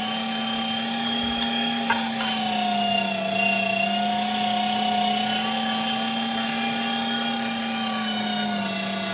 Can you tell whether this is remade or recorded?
recorded